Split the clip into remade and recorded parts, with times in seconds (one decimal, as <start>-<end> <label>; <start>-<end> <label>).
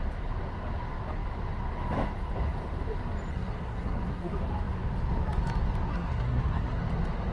0.0-3.3 recorded; 3.3-4.3 remade; 4.3-5.9 recorded; 5.9-6.8 remade; 6.8-7.3 recorded